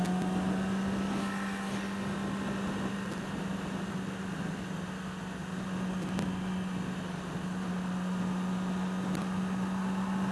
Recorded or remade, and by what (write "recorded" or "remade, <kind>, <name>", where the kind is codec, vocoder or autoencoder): recorded